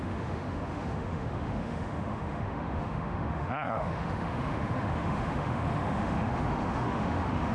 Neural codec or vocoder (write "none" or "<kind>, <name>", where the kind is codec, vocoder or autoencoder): autoencoder, DAC-VAE